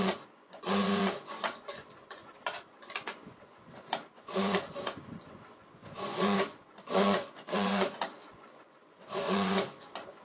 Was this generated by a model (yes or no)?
yes